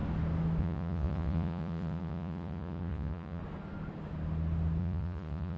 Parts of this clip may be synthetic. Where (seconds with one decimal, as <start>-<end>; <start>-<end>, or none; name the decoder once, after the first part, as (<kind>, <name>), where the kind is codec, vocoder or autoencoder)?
0.6-3.4 (vocoder, Vocos); 4.8-5.6